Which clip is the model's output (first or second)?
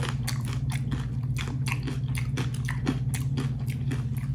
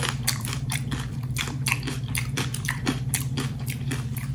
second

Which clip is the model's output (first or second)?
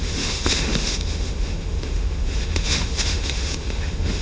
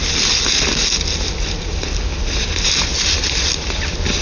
first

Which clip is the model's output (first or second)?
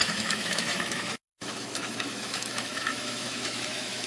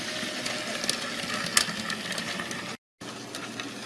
first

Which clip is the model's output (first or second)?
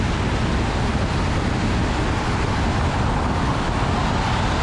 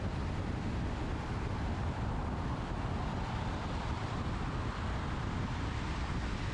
second